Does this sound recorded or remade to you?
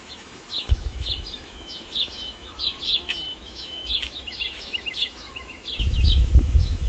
remade